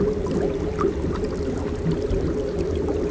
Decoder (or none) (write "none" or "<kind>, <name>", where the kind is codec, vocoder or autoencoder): none